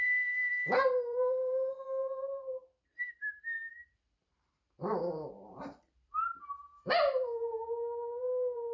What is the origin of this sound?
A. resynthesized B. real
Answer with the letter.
A